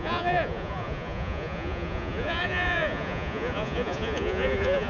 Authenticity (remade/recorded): remade